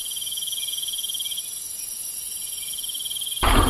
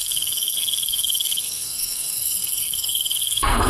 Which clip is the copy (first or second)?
second